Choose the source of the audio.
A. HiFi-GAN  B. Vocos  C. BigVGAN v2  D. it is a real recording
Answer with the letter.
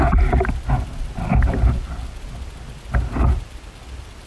D